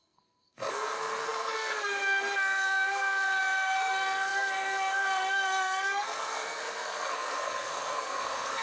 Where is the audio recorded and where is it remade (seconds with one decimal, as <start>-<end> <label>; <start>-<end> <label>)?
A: 0.0-8.6 remade